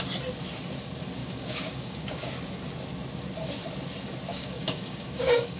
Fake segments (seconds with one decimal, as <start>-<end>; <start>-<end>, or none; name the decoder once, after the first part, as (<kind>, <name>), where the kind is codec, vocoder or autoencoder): 1.2-2.2 (codec, DAC); 4.3-5.6